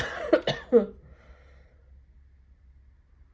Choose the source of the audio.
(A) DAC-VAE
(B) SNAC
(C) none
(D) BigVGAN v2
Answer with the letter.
C